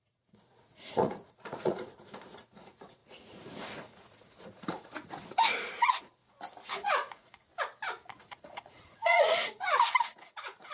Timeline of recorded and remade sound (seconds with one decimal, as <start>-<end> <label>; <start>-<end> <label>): 0.0-6.2 remade; 6.2-6.7 recorded; 6.7-7.5 remade; 7.5-8.2 recorded; 8.2-10.7 remade